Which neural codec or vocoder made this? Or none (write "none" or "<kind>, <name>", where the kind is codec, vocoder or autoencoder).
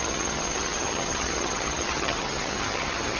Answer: vocoder, HiFi-GAN